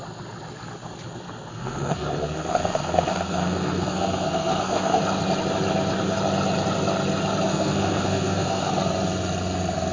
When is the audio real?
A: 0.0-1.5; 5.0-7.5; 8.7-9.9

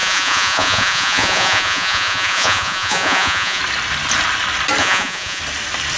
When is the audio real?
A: 3.6-4.8; 5.4-6.0

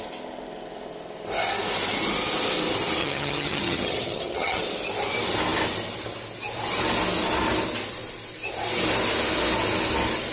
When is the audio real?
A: 0.0-3.0; 4.6-10.3

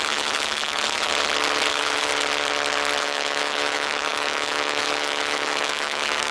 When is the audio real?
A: 1.1-1.7; 2.1-3.0

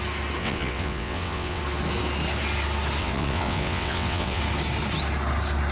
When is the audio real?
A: 0.0-0.4; 1.6-3.0; 4.4-5.7